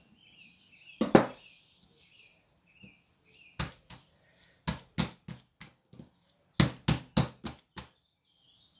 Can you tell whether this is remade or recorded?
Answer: recorded